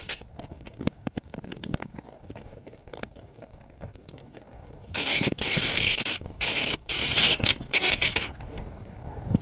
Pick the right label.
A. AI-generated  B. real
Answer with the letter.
A